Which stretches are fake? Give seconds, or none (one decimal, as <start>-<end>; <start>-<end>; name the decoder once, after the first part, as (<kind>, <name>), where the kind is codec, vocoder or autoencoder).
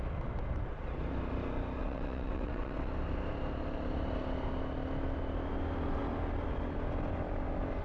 1.8-2.9 (vocoder, WaveNeXt)